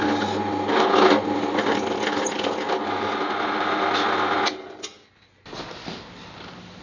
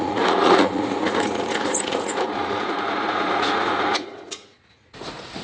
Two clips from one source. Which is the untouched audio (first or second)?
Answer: first